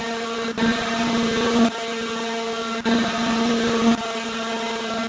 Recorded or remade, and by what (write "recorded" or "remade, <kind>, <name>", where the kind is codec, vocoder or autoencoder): remade, vocoder, BigVGAN v2